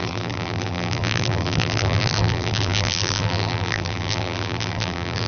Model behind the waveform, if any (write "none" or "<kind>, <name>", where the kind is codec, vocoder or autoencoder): vocoder, BigVGAN v2